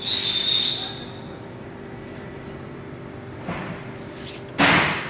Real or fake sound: real